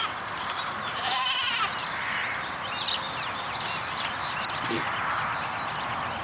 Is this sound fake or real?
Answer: fake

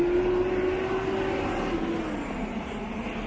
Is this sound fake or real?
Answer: real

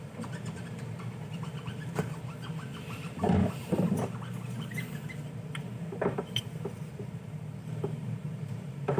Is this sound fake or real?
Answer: fake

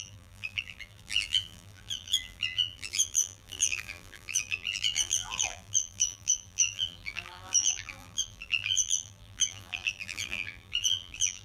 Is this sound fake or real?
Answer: fake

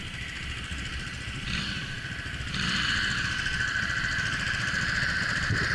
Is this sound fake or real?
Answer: real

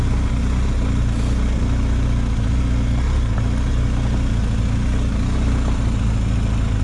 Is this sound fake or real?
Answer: real